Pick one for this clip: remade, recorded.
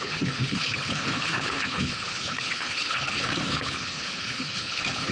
remade